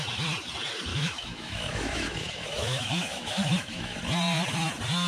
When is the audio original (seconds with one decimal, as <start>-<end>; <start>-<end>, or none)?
0.0-0.9; 4.0-5.1